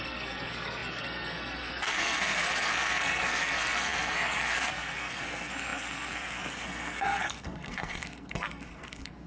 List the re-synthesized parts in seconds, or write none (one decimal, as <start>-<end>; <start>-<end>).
0.0-9.3